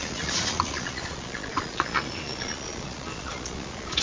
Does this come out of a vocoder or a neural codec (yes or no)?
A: yes